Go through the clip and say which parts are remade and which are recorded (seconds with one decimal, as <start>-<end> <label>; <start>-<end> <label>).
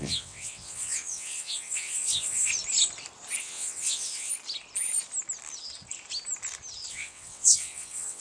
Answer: 0.0-2.5 remade; 2.5-3.4 recorded; 3.4-4.3 remade; 4.3-6.9 recorded; 6.9-8.2 remade